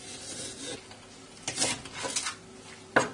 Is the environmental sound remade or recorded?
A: recorded